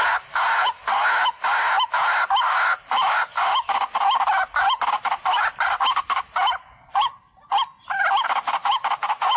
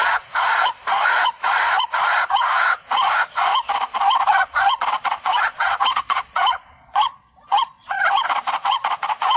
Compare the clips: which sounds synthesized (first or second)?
second